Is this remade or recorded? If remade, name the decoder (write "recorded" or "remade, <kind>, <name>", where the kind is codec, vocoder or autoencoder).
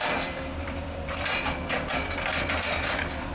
remade, vocoder, BigVGAN v2